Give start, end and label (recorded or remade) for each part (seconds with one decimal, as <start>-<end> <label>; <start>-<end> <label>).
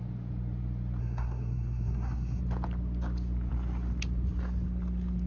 0.0-1.0 recorded; 1.0-2.4 remade; 2.4-5.3 recorded